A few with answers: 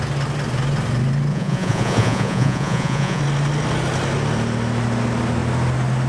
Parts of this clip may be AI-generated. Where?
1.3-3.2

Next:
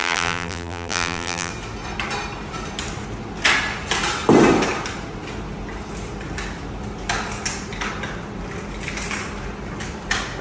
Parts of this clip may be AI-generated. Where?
0.0-1.5

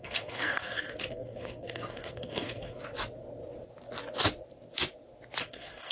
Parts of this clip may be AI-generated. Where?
0.0-2.8; 5.4-5.9

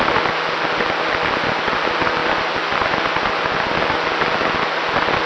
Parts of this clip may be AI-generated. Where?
none